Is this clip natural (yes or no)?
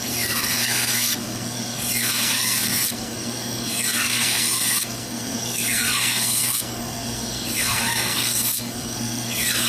no